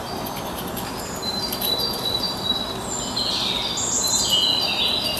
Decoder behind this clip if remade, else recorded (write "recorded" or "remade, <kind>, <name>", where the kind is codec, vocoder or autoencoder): recorded